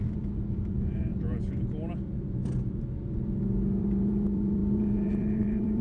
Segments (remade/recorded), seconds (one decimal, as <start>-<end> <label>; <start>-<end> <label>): 0.0-1.1 remade; 1.1-2.0 recorded; 2.0-2.4 remade; 2.4-3.8 recorded; 3.8-5.8 remade